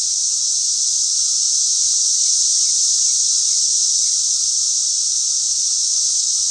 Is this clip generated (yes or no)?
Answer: yes